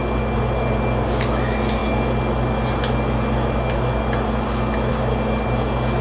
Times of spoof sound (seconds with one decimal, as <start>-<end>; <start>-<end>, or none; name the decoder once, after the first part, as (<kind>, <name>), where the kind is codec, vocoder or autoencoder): none